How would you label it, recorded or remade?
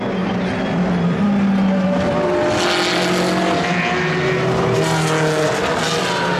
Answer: recorded